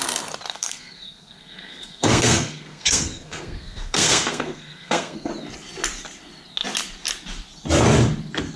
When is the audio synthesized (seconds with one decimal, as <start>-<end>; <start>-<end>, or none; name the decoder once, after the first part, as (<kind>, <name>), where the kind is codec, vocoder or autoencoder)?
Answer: 0.5-5.3 (codec, SNAC)